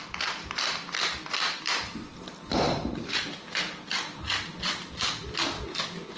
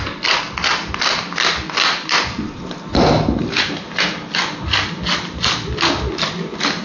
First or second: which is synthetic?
first